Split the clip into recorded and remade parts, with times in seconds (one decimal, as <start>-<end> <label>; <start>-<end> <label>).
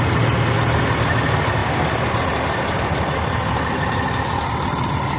0.0-5.2 recorded